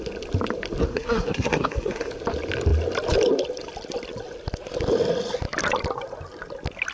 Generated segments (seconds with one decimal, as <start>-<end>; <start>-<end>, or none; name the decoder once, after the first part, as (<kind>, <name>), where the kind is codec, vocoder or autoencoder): 0.9-2.1 (codec, SNAC)